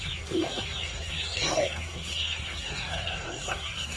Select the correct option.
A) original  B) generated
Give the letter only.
B